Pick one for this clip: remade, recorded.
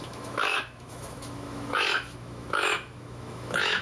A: remade